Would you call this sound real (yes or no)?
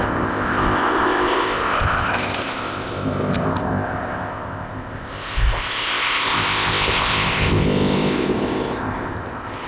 no